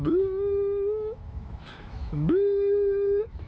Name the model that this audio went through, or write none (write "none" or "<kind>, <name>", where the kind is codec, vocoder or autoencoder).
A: autoencoder, DAC-VAE